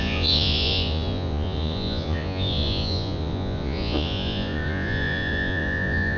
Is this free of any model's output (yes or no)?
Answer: no